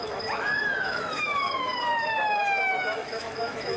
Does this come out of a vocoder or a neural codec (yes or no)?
yes